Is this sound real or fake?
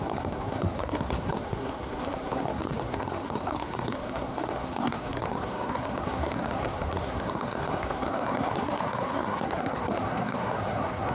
fake